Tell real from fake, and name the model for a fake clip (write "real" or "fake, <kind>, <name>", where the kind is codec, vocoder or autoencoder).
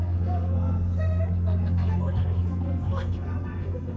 fake, codec, SNAC